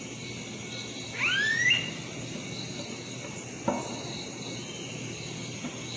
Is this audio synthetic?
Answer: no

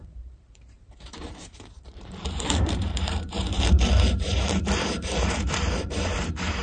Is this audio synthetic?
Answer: yes